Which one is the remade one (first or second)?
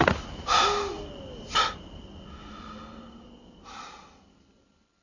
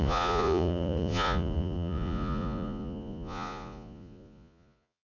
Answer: second